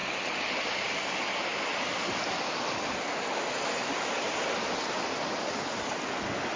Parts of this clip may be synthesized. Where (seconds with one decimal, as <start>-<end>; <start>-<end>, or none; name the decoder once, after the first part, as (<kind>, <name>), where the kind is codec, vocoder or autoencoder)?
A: 0.0-1.1 (vocoder, BigVGAN v2)